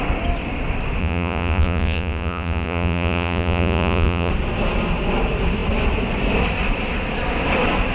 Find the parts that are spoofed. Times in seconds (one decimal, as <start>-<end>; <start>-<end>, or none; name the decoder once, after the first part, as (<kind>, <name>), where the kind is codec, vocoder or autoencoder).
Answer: 1.0-4.3 (vocoder, Vocos)